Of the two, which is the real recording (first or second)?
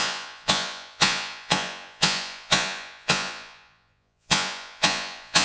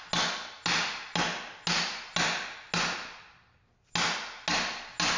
second